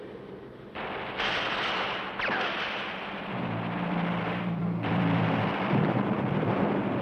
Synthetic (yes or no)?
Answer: yes